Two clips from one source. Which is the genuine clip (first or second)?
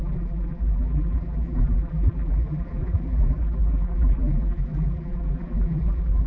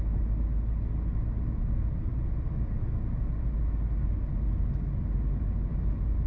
second